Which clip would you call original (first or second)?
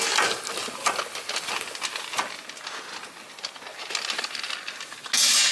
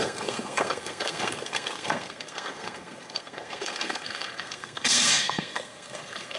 first